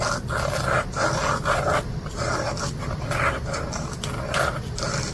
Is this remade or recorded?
recorded